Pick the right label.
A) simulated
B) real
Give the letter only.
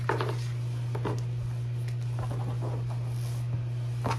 B